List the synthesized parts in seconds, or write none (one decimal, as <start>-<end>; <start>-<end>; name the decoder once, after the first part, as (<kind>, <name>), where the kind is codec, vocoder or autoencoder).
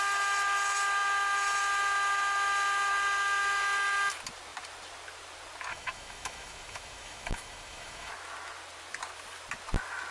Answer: 5.7-8.1 (autoencoder, DAC-VAE)